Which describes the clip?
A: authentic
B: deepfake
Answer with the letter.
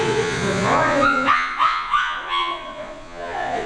B